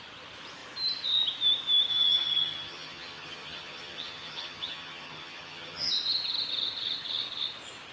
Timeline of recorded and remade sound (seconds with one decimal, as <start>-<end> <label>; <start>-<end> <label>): 0.0-1.9 recorded; 1.9-5.9 remade; 5.9-7.9 recorded